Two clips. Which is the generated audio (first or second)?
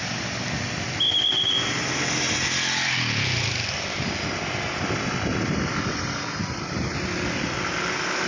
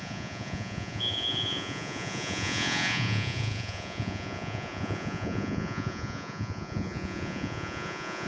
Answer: second